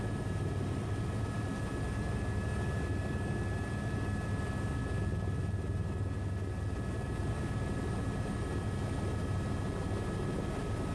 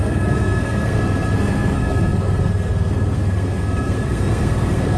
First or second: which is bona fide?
first